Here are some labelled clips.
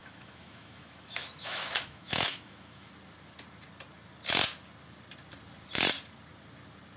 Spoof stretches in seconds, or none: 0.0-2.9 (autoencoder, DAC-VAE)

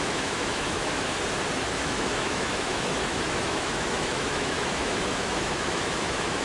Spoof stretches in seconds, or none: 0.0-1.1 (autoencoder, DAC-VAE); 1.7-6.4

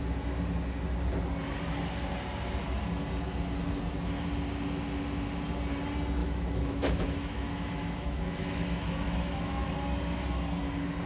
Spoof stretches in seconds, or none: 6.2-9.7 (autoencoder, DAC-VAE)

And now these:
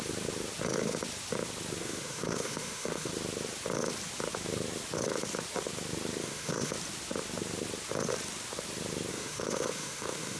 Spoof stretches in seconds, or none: 1.8-3.1 (autoencoder, DAC-VAE); 6.2-6.7; 9.1-10.4